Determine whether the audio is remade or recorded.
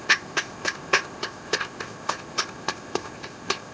remade